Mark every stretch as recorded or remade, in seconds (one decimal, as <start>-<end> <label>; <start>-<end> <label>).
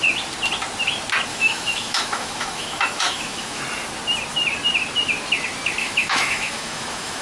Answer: 0.0-1.3 recorded; 1.3-3.6 remade; 3.6-5.8 recorded; 5.8-7.2 remade